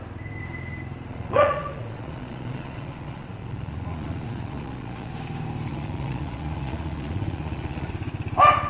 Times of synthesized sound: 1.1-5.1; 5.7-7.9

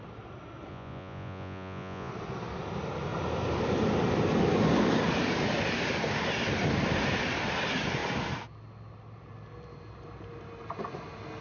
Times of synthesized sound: 0.7-2.1